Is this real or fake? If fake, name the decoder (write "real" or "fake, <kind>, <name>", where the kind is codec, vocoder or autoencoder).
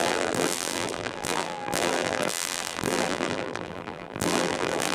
fake, vocoder, BigVGAN v2